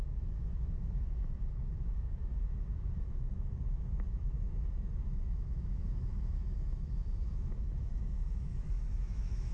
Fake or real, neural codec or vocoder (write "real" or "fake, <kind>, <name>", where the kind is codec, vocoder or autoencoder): fake, autoencoder, DAC-VAE